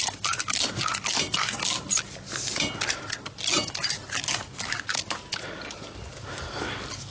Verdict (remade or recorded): recorded